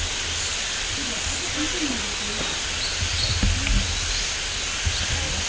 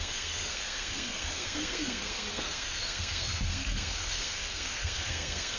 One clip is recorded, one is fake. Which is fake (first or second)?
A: second